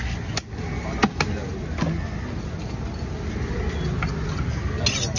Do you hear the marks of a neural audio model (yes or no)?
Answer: no